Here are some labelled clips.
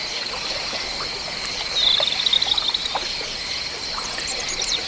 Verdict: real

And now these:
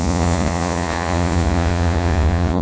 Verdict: fake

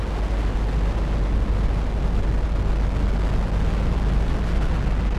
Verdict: real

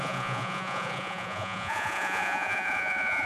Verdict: fake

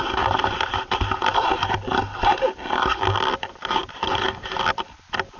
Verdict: real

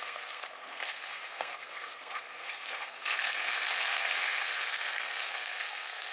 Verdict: fake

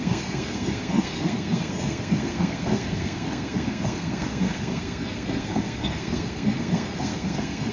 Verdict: fake